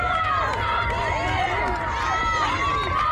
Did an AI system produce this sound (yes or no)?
no